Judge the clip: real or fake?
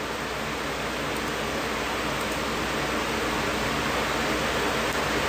real